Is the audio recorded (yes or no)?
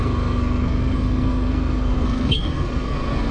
no